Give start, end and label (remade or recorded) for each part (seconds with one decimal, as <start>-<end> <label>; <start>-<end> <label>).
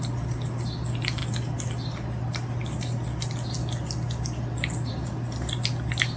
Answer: 0.0-6.2 recorded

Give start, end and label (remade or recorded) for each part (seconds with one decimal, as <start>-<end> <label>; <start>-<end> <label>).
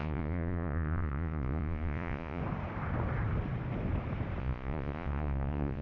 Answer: 0.0-2.4 remade; 2.4-4.4 recorded; 4.4-5.8 remade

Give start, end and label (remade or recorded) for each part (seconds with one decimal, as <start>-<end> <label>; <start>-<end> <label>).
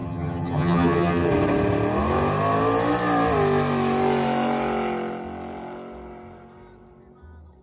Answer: 0.0-1.3 remade; 1.3-7.6 recorded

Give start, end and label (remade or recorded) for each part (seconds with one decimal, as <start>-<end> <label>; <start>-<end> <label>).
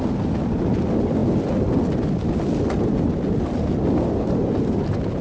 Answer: 0.0-5.2 recorded